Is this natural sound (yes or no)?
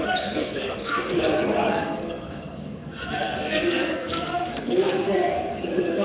no